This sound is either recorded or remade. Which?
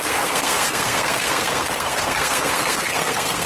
remade